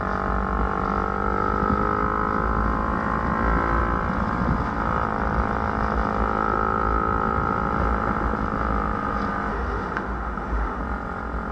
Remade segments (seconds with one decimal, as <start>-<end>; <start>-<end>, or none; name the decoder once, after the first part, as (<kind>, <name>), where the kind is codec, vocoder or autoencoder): 9.5-10.8 (autoencoder, DAC-VAE)